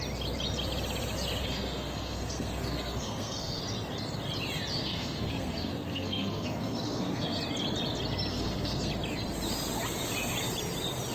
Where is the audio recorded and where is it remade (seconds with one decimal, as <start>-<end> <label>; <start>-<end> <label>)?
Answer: 0.0-1.4 recorded; 1.4-3.6 remade; 3.6-4.8 recorded; 4.8-7.4 remade; 7.4-8.3 recorded; 8.3-8.9 remade; 8.9-11.1 recorded